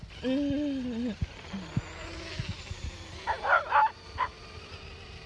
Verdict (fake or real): real